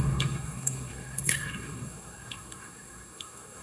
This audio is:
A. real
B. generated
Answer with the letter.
B